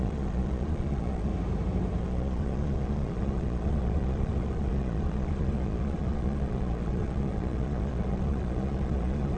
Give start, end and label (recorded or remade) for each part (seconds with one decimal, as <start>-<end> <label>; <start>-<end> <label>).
0.0-1.3 remade; 1.3-2.0 recorded; 2.0-9.4 remade